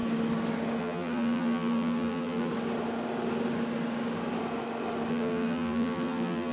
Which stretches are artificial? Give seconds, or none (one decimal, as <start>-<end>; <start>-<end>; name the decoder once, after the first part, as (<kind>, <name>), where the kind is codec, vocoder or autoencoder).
0.8-2.5 (vocoder, BigVGAN v2); 5.1-6.5